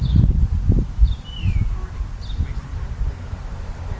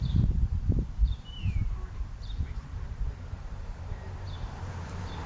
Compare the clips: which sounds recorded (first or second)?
first